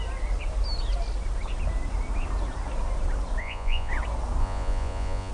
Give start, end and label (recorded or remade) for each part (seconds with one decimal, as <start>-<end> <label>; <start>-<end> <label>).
0.0-3.4 recorded; 3.4-3.9 remade; 3.9-4.4 recorded; 4.4-5.3 remade